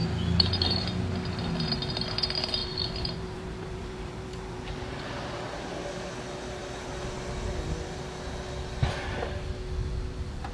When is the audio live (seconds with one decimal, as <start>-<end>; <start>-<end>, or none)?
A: 0.9-2.6; 5.4-10.5